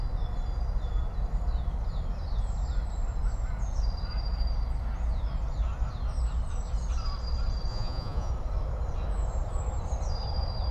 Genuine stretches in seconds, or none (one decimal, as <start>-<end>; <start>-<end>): 0.0-7.7; 8.3-10.7